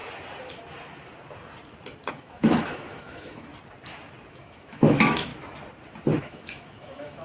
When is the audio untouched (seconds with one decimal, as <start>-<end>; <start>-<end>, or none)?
0.0-2.1; 3.5-4.3; 5.3-6.2